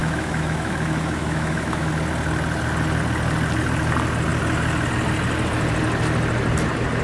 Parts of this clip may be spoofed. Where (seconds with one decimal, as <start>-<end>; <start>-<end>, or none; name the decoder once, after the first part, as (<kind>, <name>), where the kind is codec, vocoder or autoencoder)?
0.0-1.9 (autoencoder, DAC-VAE)